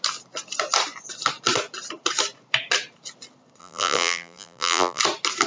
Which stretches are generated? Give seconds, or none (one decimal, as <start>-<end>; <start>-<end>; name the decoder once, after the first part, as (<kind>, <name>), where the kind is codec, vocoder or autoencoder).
3.6-5.0 (vocoder, BigVGAN v2)